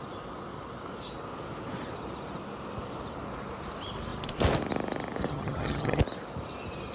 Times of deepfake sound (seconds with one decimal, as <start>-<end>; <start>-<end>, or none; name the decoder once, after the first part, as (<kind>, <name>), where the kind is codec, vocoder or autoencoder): 5.3-6.0 (vocoder, HiFi-GAN)